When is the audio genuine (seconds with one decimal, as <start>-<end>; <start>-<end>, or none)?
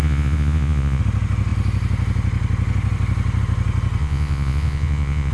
1.0-4.0